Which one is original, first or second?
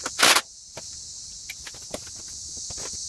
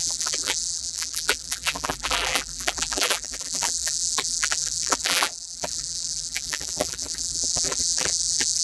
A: first